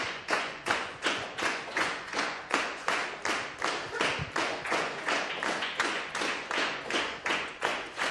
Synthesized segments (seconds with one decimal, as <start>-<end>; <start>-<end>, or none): 0.0-3.0; 4.4-8.1

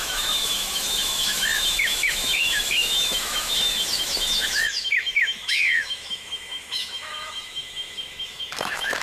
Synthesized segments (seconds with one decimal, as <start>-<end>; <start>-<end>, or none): 0.0-9.0

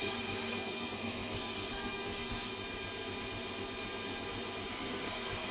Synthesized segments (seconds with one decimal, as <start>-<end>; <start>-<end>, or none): 0.0-2.5; 4.7-5.5

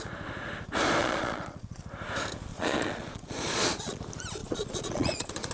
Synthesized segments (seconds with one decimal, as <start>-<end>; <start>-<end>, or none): 1.0-1.8; 2.5-4.0; 4.4-5.5

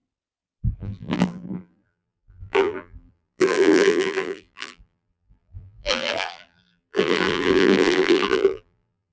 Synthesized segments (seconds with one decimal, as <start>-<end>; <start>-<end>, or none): 0.8-9.1

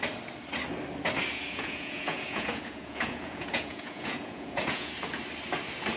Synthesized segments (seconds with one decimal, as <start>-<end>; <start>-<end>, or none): 1.3-4.9

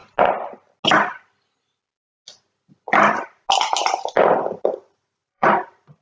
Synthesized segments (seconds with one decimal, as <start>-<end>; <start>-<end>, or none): 5.2-6.0